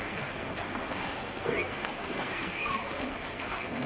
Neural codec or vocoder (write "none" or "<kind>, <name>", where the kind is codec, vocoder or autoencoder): codec, SNAC